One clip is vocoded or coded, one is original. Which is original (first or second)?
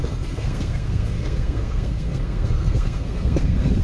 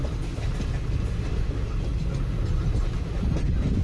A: second